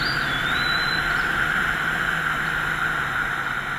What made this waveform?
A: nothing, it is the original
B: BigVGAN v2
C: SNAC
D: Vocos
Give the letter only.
A